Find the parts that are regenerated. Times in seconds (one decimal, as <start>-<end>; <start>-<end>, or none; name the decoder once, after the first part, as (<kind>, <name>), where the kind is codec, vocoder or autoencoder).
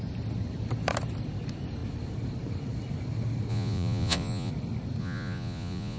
3.5-4.5 (vocoder, Vocos); 5.0-6.0